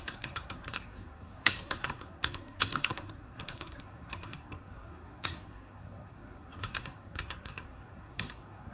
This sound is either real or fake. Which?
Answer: fake